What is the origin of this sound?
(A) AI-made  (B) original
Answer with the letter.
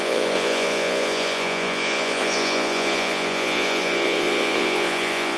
A